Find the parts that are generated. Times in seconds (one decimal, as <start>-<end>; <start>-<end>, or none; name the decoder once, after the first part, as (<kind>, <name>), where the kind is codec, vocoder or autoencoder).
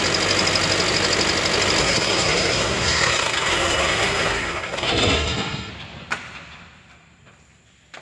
1.8-5.7 (codec, SNAC)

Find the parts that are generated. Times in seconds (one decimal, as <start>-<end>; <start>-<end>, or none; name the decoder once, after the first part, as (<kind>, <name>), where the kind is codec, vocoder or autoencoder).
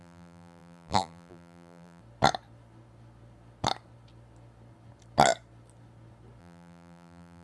0.0-2.0 (vocoder, BigVGAN v2); 6.4-7.4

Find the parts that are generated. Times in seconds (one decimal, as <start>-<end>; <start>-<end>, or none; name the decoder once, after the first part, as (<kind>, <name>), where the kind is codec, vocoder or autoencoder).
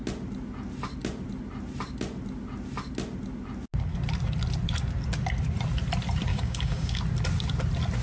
6.3-7.0 (codec, DAC)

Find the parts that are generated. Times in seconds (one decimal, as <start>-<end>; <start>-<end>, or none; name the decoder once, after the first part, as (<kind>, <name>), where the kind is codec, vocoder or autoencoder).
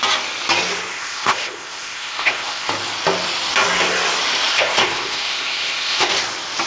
0.9-2.7 (codec, ZipCodec); 4.5-6.1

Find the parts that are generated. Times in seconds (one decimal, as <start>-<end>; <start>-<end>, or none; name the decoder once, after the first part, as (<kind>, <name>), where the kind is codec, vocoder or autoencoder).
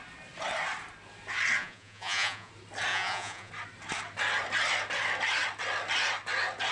1.6-2.5 (vocoder, Vocos); 2.9-3.5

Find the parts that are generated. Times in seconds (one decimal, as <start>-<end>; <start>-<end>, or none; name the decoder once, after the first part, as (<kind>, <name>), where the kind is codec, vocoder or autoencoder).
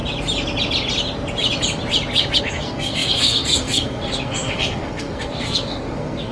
2.4-6.3 (codec, SNAC)